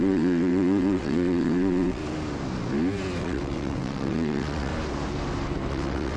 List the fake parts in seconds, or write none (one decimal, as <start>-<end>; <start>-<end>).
0.0-2.0; 3.2-4.7; 5.7-6.2

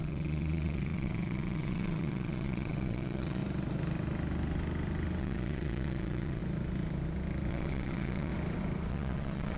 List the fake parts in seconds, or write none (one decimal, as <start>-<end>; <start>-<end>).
0.0-3.4; 5.2-6.4; 7.5-8.3; 8.9-9.6